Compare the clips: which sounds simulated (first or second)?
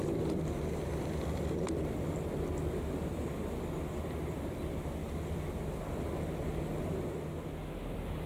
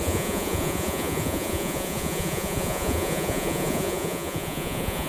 second